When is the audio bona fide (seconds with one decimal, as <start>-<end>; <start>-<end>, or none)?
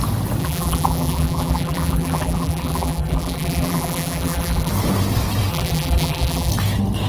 0.0-0.4; 4.7-5.5; 6.5-7.1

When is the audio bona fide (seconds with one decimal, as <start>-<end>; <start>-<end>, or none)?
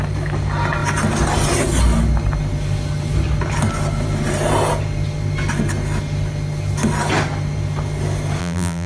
0.0-8.4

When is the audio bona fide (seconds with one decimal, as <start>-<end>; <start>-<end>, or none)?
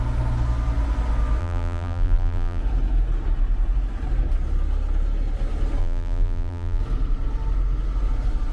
0.0-1.4; 2.6-5.8; 6.8-8.5